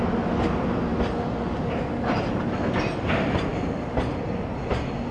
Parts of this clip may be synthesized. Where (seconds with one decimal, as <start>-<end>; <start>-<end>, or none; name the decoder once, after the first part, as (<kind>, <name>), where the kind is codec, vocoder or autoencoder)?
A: none